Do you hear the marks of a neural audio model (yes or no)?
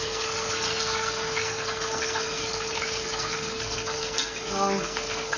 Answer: yes